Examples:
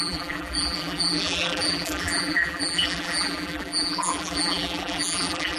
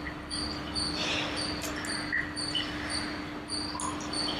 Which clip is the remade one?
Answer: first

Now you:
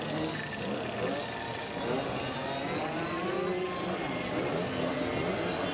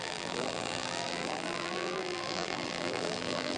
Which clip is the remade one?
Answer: second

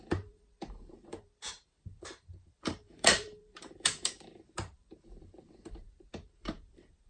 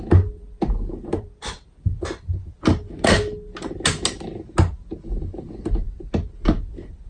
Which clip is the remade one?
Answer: first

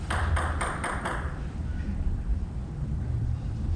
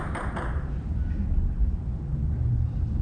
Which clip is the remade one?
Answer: first